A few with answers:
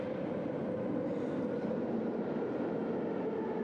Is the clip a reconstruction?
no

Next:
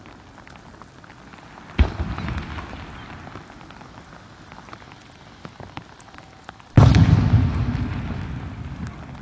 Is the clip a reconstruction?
no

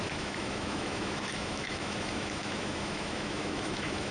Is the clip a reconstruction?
yes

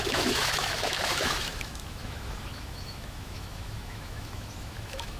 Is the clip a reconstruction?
yes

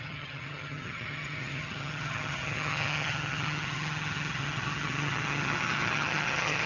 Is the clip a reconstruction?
yes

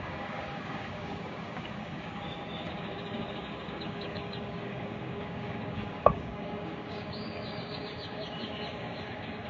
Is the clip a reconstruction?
yes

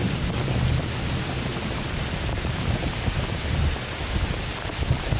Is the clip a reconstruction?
no